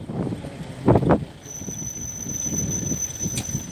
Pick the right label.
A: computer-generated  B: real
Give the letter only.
B